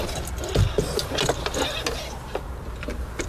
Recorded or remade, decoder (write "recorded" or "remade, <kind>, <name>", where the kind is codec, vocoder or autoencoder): recorded